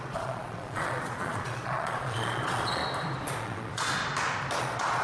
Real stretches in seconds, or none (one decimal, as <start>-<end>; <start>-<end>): 2.8-3.4; 4.0-4.6